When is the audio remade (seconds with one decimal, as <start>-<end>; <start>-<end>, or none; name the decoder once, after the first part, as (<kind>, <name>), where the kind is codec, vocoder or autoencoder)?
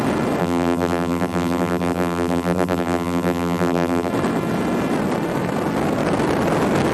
0.4-4.1 (vocoder, BigVGAN v2)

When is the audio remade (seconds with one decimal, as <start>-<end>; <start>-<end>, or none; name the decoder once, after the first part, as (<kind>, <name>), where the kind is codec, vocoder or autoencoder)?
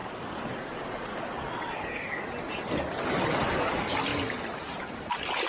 none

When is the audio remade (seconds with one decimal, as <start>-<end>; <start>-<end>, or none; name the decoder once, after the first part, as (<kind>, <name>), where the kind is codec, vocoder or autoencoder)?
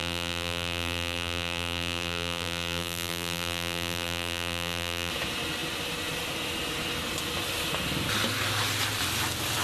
0.0-5.1 (vocoder, BigVGAN v2)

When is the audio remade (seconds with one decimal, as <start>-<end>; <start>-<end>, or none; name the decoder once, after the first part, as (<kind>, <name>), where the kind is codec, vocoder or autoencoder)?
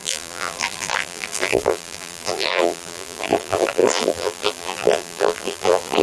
0.0-6.0 (vocoder, BigVGAN v2)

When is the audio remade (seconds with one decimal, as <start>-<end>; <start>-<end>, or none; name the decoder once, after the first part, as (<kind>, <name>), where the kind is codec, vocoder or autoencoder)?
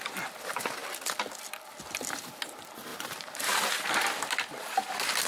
2.9-3.9 (vocoder, BigVGAN v2)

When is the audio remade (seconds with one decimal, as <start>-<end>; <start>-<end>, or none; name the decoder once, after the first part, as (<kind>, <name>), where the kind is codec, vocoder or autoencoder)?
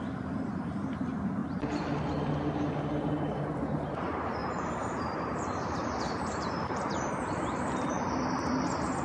0.0-1.4 (vocoder, BigVGAN v2); 3.0-9.0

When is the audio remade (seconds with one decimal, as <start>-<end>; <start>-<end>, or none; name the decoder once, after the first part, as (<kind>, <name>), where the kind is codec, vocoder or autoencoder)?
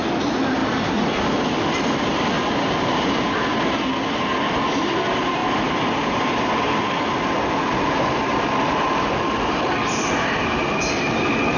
0.6-1.1 (vocoder, BigVGAN v2); 5.4-6.2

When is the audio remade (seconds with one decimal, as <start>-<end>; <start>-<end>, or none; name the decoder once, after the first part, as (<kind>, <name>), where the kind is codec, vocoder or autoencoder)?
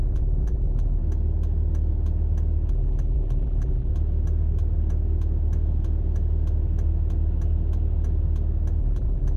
0.0-1.0 (vocoder, BigVGAN v2); 2.7-3.9; 8.8-9.4